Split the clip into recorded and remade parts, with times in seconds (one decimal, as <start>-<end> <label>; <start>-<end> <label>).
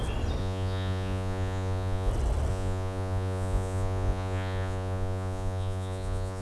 0.0-0.4 recorded; 0.4-2.1 remade; 2.1-2.5 recorded; 2.5-6.4 remade